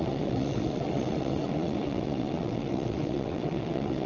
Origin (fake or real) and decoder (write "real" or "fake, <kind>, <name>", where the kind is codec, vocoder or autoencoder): fake, vocoder, WaveNeXt